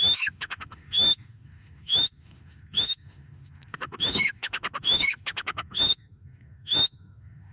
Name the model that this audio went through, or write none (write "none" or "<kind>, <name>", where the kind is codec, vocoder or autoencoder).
autoencoder, DAC-VAE